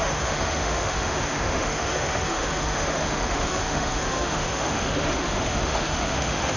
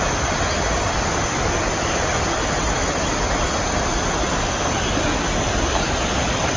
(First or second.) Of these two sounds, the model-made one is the first